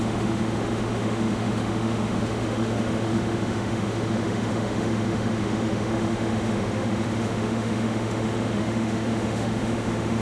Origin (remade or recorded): remade